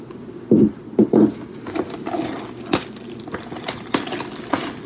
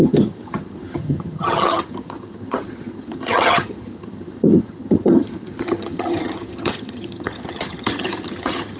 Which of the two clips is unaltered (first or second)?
first